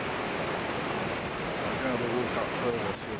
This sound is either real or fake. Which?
real